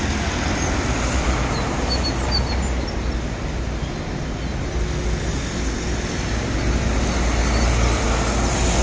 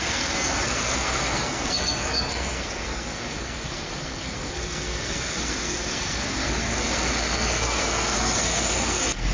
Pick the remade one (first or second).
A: second